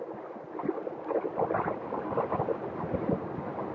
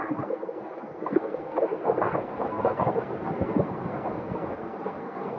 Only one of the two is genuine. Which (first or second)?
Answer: first